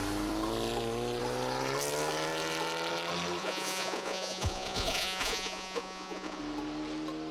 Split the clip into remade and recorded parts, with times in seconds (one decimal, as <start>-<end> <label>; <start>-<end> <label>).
0.0-3.4 recorded; 3.4-6.4 remade; 6.4-7.3 recorded